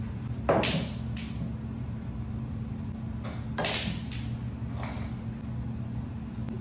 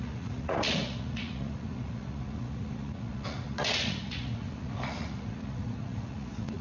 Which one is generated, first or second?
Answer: second